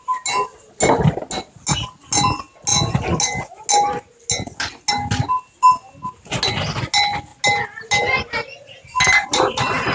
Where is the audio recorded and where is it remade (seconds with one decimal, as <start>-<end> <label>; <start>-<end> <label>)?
0.0-9.9 recorded